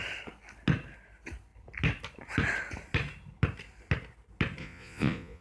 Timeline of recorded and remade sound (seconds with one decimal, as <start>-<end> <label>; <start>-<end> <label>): 0.0-4.6 recorded; 4.6-5.4 remade